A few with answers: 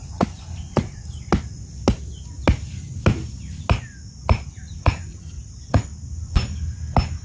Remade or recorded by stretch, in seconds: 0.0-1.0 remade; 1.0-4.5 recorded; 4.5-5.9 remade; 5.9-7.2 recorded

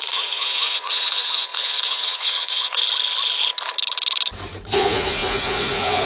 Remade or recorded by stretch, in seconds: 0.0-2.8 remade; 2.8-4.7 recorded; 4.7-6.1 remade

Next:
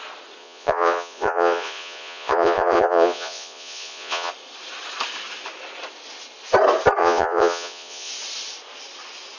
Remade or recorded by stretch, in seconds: 0.0-0.4 recorded; 0.4-4.3 remade; 4.3-7.0 recorded; 7.0-8.1 remade; 8.1-9.4 recorded

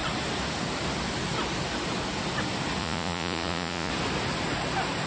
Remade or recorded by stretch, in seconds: 0.0-2.8 recorded; 2.8-3.9 remade; 3.9-5.1 recorded

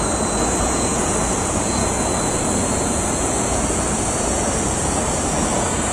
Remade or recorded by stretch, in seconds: 0.0-5.9 remade

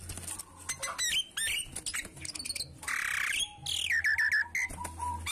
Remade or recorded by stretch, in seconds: 0.0-5.3 recorded